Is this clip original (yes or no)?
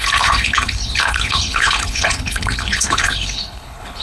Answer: no